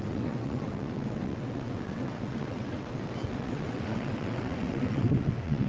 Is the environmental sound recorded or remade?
remade